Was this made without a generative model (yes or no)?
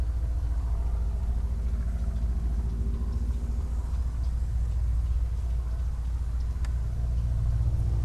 yes